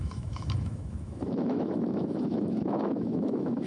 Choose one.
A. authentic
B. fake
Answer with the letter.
B